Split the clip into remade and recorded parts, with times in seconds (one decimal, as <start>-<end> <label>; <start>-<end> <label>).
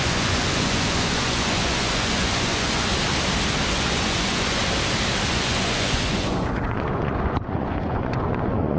0.0-2.9 remade; 2.9-3.7 recorded; 3.7-4.6 remade; 4.6-5.3 recorded; 5.3-8.8 remade